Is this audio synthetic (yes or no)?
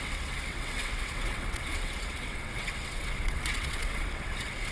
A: yes